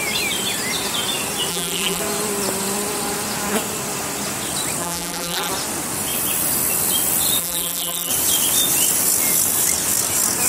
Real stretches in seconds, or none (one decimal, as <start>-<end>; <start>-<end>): 0.0-1.5; 2.0-4.8; 5.5-7.4; 8.1-10.5